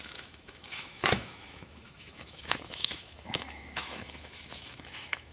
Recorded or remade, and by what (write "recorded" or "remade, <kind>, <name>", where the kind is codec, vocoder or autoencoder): remade, autoencoder, DAC-VAE